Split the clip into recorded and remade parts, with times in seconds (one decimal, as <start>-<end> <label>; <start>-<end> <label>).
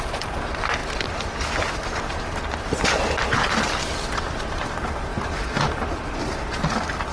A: 0.0-0.8 recorded; 0.8-3.8 remade; 3.8-7.1 recorded